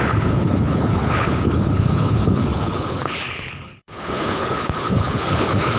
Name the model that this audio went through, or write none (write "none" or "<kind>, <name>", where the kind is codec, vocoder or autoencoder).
codec, HILCodec